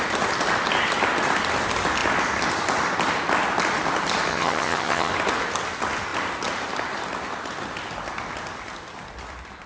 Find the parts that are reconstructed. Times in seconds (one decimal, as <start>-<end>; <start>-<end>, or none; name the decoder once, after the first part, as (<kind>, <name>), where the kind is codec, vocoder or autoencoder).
4.3-5.1 (vocoder, HiFi-GAN)